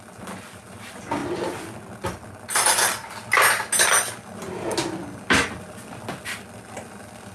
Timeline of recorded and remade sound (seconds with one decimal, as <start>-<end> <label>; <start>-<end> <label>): 0.0-7.3 recorded